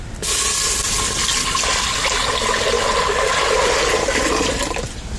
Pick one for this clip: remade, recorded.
recorded